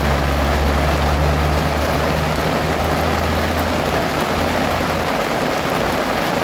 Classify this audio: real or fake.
real